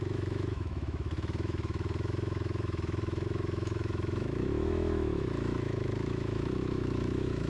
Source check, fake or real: fake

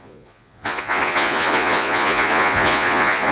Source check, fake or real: fake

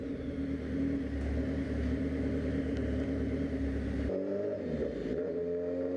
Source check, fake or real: real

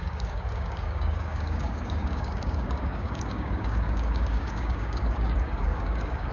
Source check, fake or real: fake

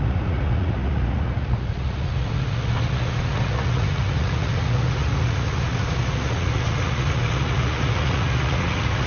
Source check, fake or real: fake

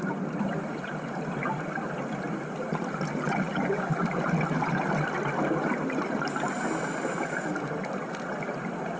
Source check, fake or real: real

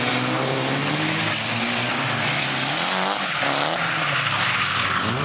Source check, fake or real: real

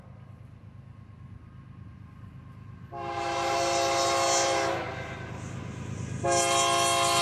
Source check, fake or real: real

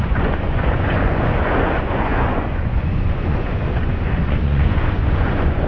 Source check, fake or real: fake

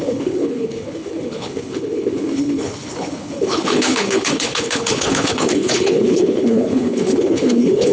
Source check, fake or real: fake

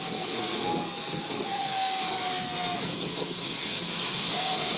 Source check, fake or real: fake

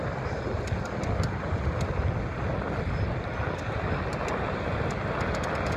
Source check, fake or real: real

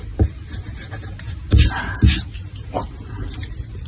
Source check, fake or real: fake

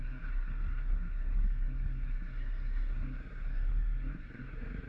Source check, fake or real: fake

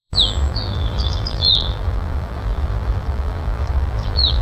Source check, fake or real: fake